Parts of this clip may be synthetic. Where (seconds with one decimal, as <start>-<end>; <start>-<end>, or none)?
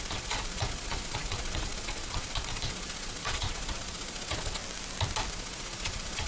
0.0-4.6; 5.3-6.3